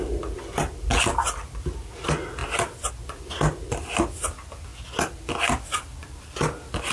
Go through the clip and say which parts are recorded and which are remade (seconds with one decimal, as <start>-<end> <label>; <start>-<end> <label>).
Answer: 0.0-6.9 recorded